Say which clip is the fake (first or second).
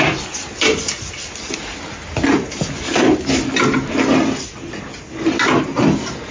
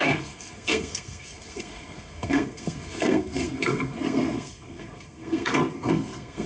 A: second